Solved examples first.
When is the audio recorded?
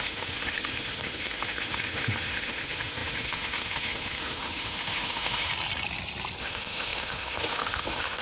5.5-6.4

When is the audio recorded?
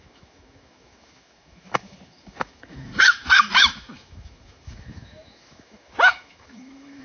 none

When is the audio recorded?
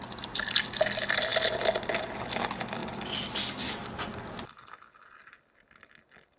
0.0-1.3; 2.4-6.4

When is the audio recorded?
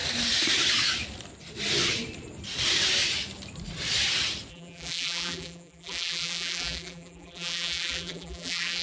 0.0-4.5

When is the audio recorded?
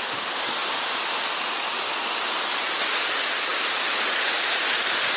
0.0-5.2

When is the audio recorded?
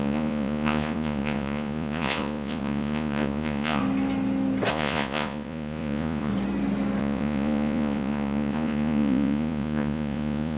3.8-4.7; 6.3-7.0